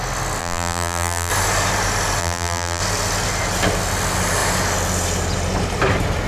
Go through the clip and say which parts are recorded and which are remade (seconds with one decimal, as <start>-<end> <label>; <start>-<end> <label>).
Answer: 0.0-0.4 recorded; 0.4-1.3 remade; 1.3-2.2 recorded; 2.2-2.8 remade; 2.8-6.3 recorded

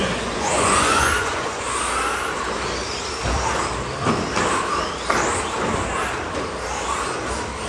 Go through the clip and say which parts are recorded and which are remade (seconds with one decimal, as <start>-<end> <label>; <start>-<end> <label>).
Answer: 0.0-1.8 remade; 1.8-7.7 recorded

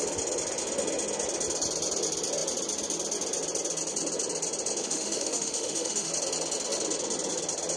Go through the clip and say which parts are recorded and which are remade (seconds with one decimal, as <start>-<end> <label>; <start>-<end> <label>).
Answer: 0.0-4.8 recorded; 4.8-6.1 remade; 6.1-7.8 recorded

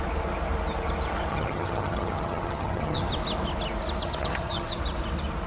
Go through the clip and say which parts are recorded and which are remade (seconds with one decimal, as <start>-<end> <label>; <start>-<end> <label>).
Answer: 0.0-1.3 recorded; 1.3-3.1 remade; 3.1-4.0 recorded; 4.0-4.8 remade; 4.8-5.5 recorded